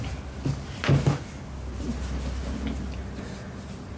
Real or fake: real